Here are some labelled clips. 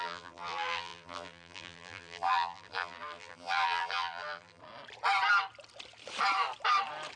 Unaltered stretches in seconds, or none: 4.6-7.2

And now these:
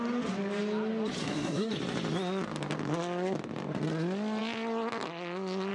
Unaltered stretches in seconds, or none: 0.0-1.2; 1.7-5.7

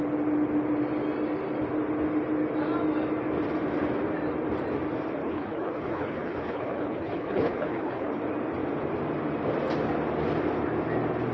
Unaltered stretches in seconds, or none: 0.0-5.2; 8.2-11.3

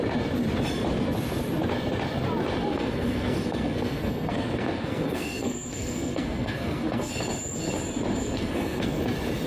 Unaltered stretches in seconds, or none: 0.0-2.7; 7.1-8.2; 9.0-9.5

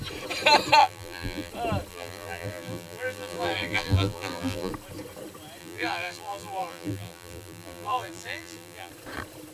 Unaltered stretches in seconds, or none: 0.0-0.8; 1.5-1.9; 4.7-5.6; 8.9-9.5